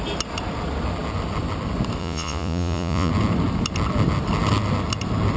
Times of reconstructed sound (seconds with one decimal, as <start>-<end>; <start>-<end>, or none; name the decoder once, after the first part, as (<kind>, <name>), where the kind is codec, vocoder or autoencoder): 2.0-3.1 (vocoder, Vocos)

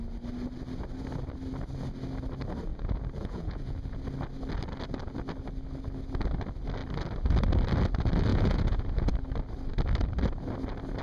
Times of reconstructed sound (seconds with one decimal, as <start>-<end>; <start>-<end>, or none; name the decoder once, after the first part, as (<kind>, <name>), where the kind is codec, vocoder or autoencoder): 2.7-4.0 (vocoder, Vocos); 8.3-9.1

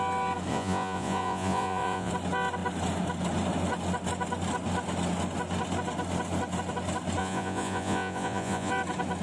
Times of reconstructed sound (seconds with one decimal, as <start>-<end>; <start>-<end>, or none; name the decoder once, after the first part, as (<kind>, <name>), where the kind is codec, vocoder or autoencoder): 0.5-2.1 (vocoder, Vocos); 7.2-8.7

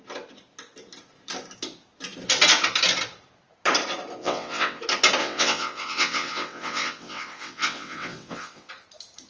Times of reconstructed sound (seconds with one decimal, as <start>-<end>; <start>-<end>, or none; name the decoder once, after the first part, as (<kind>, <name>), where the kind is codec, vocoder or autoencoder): 4.2-4.8 (vocoder, WaveNeXt); 5.2-8.7

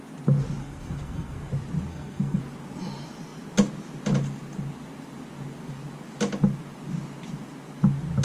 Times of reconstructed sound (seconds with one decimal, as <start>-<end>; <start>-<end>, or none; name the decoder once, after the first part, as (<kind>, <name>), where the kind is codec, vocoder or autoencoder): 0.6-1.5 (codec, SNAC); 1.9-2.4